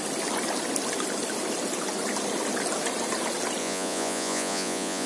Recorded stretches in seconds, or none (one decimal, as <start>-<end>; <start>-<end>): 0.0-3.6